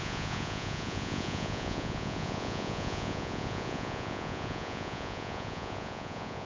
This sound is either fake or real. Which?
fake